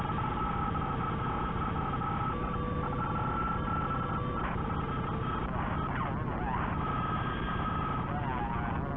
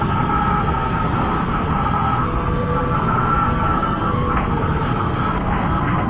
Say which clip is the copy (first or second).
second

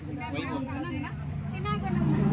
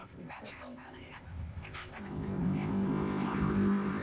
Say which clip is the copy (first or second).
second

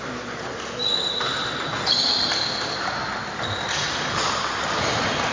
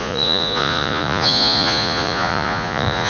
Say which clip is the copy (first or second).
second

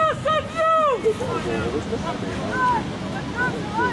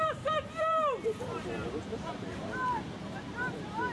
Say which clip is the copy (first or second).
second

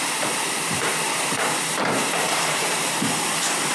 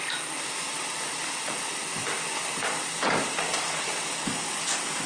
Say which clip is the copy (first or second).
first